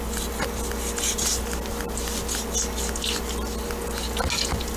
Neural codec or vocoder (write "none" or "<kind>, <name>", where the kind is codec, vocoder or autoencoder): none